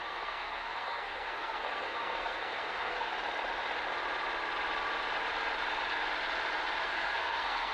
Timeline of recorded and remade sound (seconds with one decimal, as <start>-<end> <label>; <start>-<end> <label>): 0.0-3.1 remade; 3.1-6.8 recorded; 6.8-7.7 remade